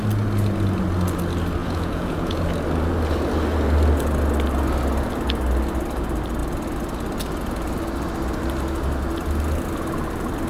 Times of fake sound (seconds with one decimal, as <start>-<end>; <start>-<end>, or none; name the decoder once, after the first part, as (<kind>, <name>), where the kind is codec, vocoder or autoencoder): 1.6-2.5 (vocoder, Vocos)